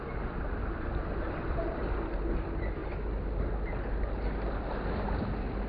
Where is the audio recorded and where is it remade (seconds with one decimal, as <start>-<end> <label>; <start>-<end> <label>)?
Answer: 0.0-2.8 remade; 2.8-3.4 recorded; 3.4-5.7 remade